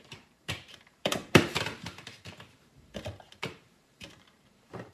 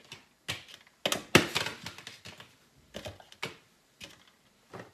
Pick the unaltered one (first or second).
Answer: second